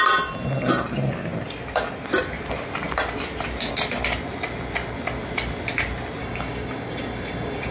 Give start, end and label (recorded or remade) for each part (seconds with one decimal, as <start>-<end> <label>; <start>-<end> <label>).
0.0-6.2 recorded; 6.2-7.7 remade